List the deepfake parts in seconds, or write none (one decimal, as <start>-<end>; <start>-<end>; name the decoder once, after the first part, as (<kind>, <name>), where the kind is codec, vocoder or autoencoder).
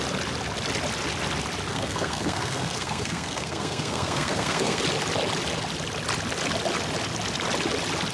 1.7-4.8 (codec, SNAC)